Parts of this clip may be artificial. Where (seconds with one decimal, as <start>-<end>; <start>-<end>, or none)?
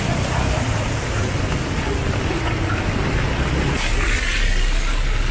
none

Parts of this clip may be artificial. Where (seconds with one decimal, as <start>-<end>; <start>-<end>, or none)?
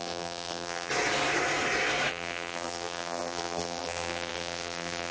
0.0-0.9; 2.1-5.1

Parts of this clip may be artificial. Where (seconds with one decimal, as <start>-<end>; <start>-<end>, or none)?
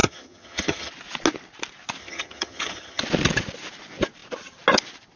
0.0-0.9; 2.0-3.0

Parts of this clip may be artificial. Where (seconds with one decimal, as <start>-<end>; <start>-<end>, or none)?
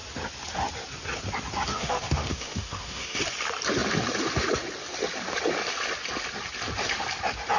1.7-3.2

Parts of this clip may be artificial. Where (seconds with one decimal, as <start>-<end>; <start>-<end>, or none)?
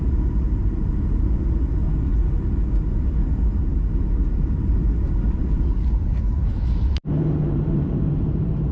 0.0-1.8; 3.5-6.4; 7.2-8.7